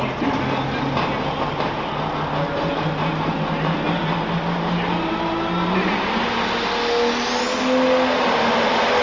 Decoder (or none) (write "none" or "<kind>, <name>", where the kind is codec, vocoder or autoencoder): none